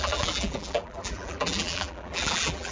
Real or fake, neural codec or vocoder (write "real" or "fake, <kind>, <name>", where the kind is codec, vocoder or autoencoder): fake, vocoder, BigVGAN v2